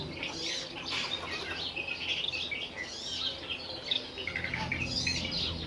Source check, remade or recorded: recorded